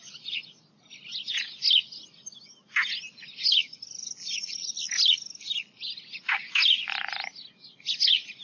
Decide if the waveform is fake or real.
real